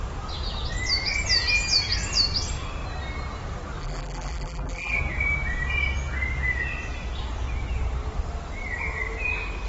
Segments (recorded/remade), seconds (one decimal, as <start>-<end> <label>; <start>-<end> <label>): 0.0-3.8 recorded; 3.8-5.0 remade; 5.0-9.7 recorded